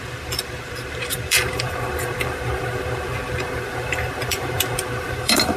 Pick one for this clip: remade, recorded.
remade